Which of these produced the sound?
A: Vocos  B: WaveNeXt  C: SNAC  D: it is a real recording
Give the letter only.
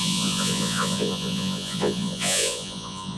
A